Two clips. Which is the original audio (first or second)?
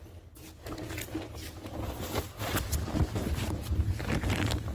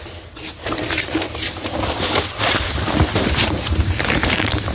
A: first